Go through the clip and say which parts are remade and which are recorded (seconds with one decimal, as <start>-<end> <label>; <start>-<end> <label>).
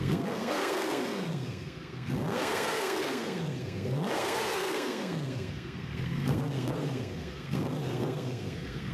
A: 0.0-8.9 remade